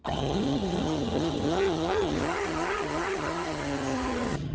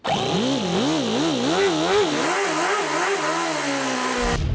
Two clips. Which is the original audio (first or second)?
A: second